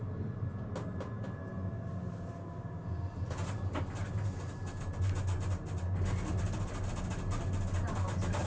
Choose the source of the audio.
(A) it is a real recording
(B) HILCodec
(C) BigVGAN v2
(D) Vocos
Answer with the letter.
A